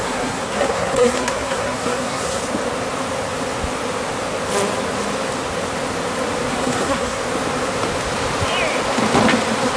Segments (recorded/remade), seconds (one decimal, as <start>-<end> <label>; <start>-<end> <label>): 0.0-2.4 remade; 2.4-6.5 recorded; 6.5-7.2 remade; 7.2-9.8 recorded